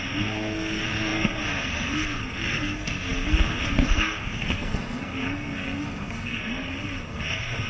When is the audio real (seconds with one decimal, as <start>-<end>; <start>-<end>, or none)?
none